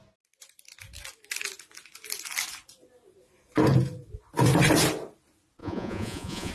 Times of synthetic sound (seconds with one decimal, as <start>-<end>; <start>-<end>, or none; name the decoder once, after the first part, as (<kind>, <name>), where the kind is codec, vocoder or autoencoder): 5.6-6.5 (vocoder, Vocos)